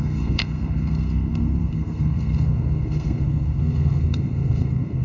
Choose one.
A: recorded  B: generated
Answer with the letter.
B